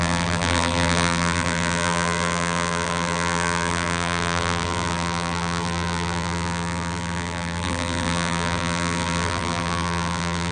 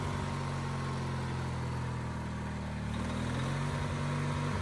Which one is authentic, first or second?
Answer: second